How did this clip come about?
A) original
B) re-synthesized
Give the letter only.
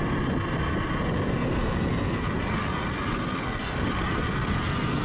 A